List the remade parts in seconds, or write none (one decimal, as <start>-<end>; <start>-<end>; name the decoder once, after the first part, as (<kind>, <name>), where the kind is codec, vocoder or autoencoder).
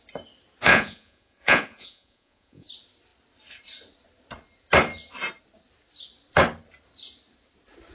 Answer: 0.7-2.7 (vocoder, Vocos)